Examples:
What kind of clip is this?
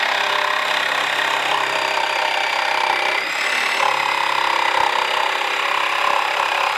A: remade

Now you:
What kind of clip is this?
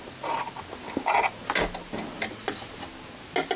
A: recorded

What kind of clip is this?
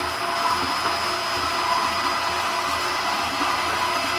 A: recorded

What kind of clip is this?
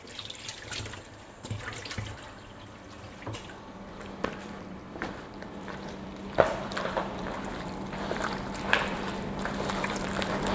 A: remade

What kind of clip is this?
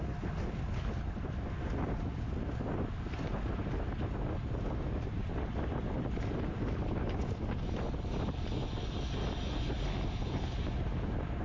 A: recorded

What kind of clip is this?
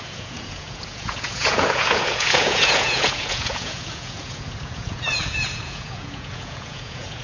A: remade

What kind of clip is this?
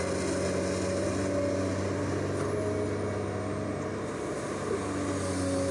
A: recorded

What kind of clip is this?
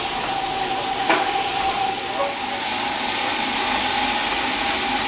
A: recorded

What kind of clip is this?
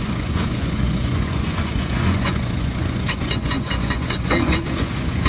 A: remade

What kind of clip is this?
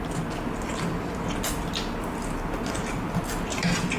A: recorded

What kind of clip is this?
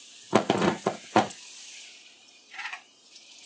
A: remade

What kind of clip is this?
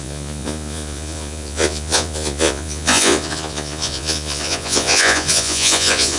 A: remade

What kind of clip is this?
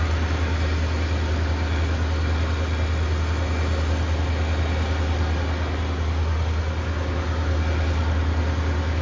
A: recorded